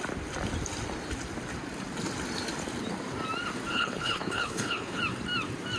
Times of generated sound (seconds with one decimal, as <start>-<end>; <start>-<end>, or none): 3.7-5.0